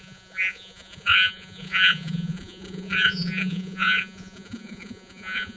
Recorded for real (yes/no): no